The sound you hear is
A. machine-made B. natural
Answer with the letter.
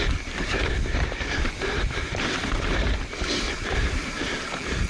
A